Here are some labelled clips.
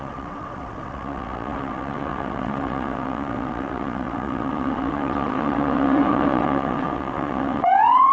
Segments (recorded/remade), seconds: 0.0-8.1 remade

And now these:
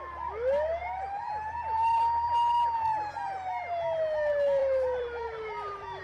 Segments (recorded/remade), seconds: 0.0-0.8 recorded; 0.8-2.3 remade; 2.3-4.6 recorded; 4.6-6.0 remade

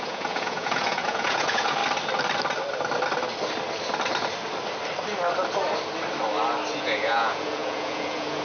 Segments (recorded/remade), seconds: 0.0-1.8 remade; 1.8-6.8 recorded; 6.8-8.4 remade

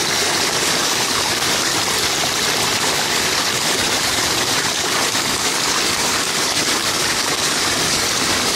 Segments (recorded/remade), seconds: 0.0-1.7 remade; 1.7-2.8 recorded; 2.8-8.6 remade

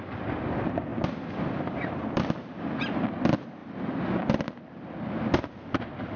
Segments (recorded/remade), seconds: 0.0-0.9 recorded; 0.9-3.1 remade; 3.1-6.2 recorded